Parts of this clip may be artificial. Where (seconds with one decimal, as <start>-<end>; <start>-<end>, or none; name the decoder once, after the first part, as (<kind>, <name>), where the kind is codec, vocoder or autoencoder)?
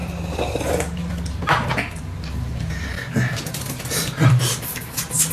none